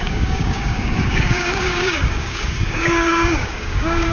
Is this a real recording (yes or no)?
no